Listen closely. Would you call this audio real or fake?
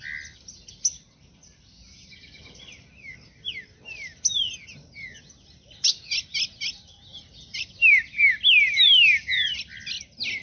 real